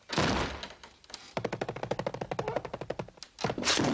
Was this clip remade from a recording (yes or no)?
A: no